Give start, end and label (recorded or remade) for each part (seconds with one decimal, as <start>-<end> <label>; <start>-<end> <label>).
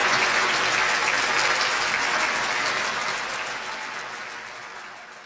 0.0-0.5 remade; 0.5-5.3 recorded